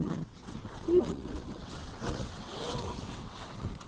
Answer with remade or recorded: remade